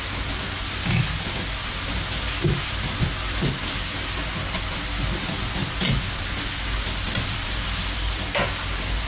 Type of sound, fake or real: real